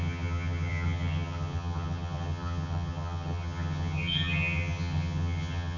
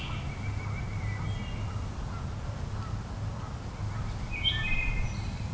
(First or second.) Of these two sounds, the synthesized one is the first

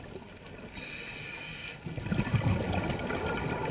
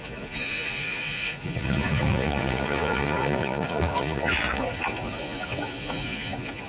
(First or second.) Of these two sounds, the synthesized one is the second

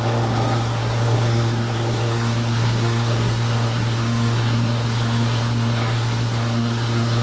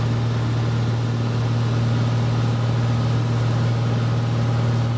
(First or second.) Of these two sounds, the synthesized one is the first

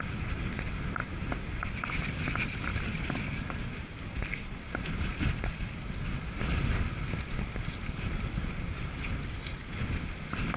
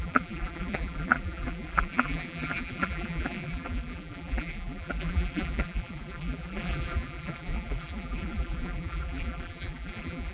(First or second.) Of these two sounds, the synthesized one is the second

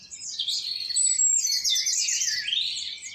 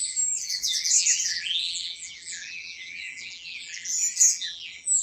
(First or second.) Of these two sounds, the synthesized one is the second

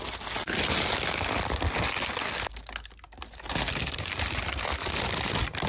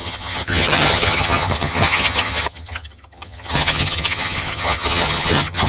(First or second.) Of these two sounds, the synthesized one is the second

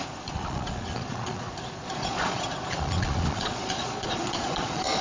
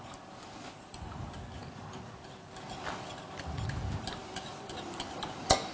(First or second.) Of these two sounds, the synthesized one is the first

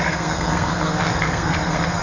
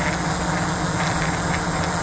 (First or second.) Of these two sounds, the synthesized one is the first